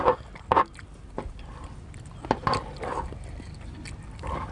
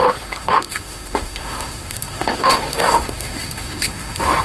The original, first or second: first